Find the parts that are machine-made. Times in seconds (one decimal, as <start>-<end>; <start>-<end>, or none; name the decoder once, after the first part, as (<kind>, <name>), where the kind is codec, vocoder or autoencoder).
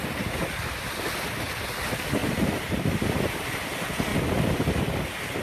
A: 2.2-2.9 (vocoder, BigVGAN v2); 4.1-4.7